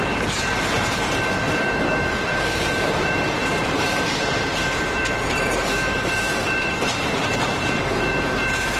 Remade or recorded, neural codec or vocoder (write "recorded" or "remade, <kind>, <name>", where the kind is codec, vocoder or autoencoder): remade, vocoder, BigVGAN v2